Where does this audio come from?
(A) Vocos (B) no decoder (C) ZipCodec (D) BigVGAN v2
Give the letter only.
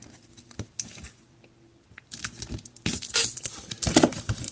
B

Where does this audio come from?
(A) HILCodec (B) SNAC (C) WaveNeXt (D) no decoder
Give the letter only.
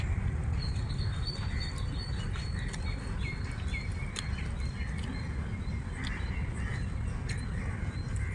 D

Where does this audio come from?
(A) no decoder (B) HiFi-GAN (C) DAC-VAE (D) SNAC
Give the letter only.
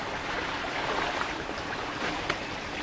A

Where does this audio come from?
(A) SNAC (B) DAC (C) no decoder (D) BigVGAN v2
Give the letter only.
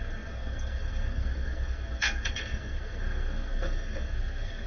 A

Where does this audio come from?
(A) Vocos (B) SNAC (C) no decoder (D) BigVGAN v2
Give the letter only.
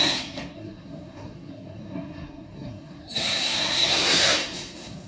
B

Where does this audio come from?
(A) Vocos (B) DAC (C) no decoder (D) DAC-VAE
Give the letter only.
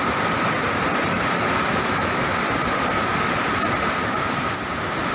C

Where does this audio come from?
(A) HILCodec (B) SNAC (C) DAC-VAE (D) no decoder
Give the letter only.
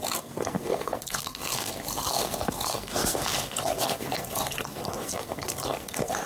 B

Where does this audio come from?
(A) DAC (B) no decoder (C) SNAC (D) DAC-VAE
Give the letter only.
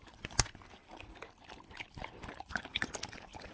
B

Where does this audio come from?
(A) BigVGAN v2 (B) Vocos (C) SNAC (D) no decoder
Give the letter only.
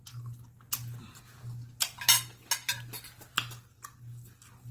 D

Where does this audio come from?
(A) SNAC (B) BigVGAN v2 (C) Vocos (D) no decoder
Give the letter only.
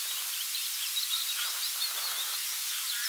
B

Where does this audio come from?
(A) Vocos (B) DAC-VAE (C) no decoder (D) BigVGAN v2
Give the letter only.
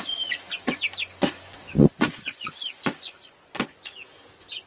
A